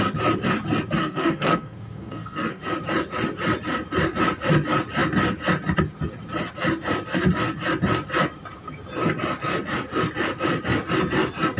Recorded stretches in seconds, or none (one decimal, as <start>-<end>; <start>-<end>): 0.0-1.0; 2.6-11.6